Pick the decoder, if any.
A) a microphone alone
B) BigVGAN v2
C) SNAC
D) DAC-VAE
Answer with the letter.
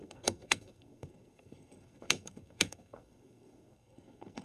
C